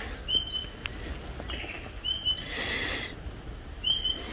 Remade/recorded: recorded